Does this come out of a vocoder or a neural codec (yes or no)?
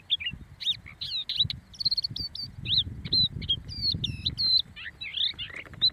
no